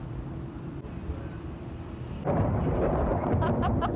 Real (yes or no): yes